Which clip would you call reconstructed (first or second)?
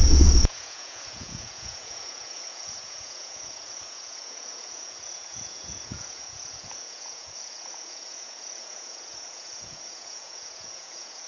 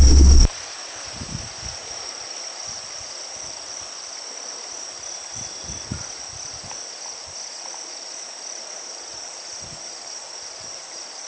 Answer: first